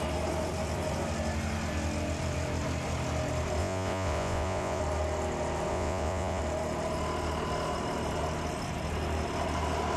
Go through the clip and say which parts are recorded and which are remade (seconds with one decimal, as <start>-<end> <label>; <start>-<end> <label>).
0.0-3.6 recorded; 3.6-4.8 remade; 4.8-5.7 recorded; 5.7-6.4 remade; 6.4-10.0 recorded